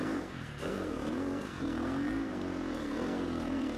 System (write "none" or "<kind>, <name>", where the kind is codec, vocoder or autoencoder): codec, SNAC